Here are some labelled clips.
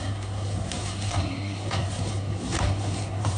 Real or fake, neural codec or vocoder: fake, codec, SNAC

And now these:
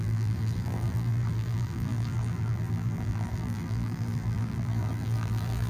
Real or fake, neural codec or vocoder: fake, vocoder, BigVGAN v2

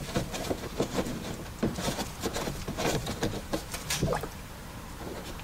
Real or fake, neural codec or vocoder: fake, vocoder, BigVGAN v2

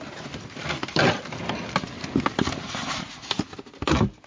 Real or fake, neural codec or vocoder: real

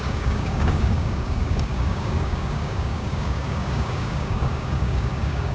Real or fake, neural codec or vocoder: fake, codec, DAC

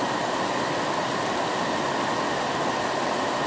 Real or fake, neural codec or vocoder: real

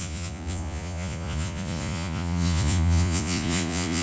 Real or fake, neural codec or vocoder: fake, vocoder, Vocos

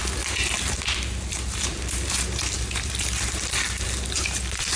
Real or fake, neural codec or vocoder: fake, vocoder, BigVGAN v2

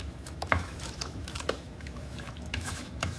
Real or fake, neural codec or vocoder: fake, autoencoder, DAC-VAE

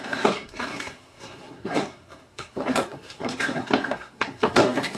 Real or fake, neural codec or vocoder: fake, codec, SNAC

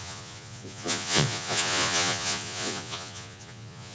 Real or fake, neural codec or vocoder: fake, vocoder, Vocos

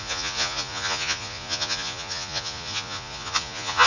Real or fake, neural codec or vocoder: fake, vocoder, Vocos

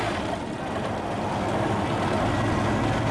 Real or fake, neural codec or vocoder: real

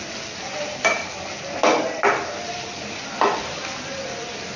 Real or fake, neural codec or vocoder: real